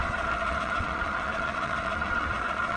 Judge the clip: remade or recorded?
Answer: remade